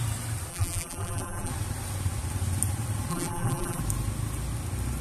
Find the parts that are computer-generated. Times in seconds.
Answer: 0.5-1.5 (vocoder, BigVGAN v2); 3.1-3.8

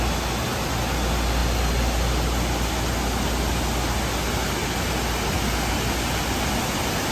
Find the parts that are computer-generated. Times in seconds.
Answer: none